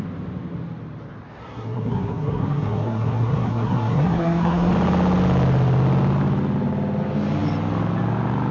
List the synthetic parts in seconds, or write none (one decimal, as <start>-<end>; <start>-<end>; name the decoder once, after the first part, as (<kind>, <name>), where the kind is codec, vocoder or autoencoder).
1.4-4.7 (codec, SNAC)